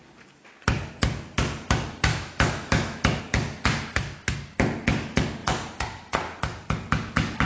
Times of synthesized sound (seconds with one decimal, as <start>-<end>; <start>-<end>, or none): 2.1-3.2